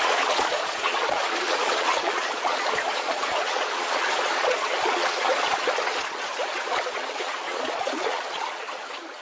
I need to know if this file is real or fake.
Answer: fake